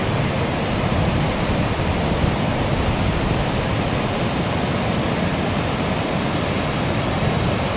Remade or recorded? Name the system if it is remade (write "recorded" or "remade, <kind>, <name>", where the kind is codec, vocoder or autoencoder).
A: recorded